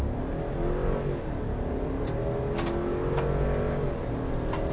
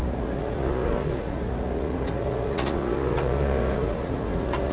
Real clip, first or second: first